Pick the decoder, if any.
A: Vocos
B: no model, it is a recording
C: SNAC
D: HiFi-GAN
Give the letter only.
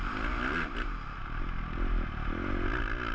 B